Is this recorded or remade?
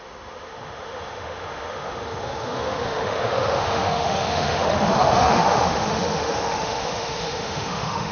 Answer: remade